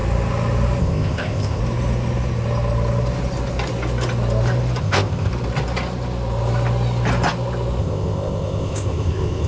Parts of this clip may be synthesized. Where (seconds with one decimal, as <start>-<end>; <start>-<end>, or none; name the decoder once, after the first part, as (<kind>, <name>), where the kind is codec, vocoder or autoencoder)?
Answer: 0.8-1.6 (codec, ZipCodec); 4.8-5.3; 7.8-9.5